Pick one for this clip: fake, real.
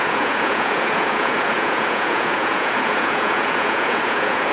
fake